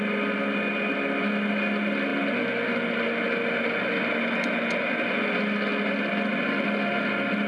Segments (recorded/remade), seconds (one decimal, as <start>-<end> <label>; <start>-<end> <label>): 0.0-7.5 recorded